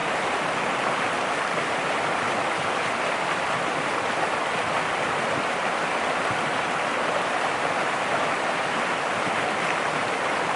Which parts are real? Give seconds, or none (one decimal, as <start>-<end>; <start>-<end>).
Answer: 0.0-10.6